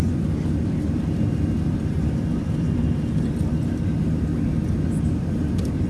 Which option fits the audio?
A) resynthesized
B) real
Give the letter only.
B